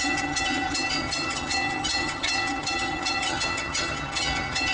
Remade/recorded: remade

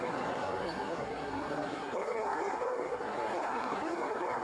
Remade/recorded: remade